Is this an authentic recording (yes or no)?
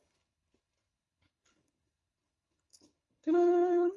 no